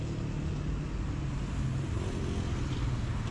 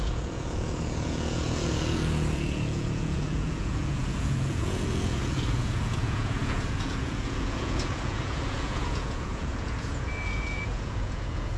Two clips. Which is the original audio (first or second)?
first